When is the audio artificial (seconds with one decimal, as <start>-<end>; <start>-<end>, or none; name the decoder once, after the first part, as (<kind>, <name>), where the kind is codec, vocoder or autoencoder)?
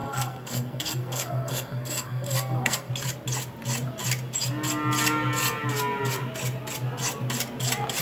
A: 0.0-2.9 (codec, SNAC)